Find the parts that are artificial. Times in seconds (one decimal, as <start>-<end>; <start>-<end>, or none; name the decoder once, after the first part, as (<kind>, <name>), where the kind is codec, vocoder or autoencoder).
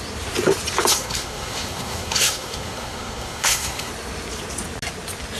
0.9-3.9 (codec, SNAC)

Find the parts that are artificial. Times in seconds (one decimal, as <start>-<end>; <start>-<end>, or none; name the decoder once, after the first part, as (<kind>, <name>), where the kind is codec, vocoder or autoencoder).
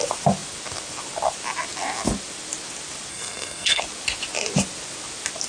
3.1-3.8 (codec, SNAC)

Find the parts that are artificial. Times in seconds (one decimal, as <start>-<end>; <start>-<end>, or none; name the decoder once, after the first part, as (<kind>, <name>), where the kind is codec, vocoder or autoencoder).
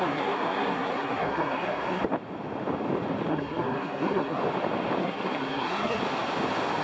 0.0-2.0 (codec, SNAC); 3.3-4.4; 5.0-6.0